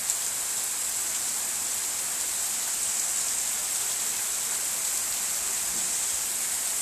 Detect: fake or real real